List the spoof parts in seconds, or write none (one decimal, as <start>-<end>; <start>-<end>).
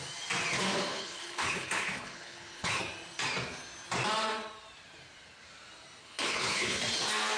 0.9-2.8; 6.0-6.8